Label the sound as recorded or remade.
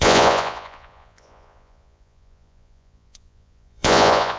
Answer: remade